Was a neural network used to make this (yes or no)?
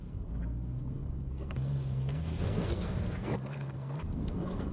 yes